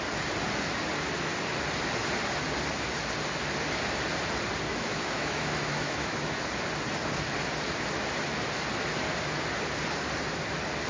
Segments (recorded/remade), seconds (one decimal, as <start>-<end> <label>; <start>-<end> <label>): 0.0-4.7 recorded; 4.7-6.4 remade; 6.4-10.9 recorded